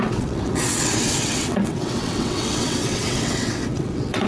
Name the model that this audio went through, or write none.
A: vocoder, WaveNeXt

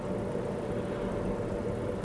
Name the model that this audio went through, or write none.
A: none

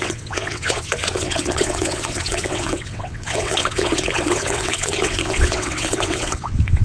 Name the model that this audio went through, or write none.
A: vocoder, WaveNeXt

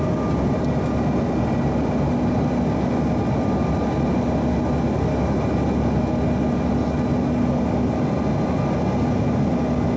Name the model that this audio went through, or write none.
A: none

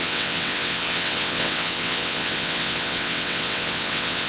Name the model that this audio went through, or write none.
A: vocoder, WaveNeXt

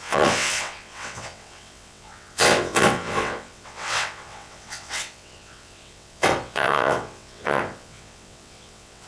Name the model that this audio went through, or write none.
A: vocoder, WaveNeXt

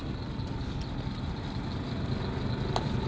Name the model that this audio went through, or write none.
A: none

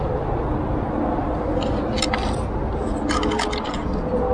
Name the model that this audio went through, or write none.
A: none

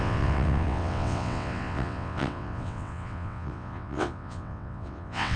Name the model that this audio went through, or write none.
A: vocoder, WaveNeXt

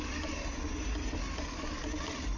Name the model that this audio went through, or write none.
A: none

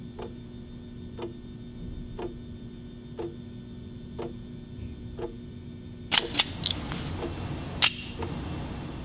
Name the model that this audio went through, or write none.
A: none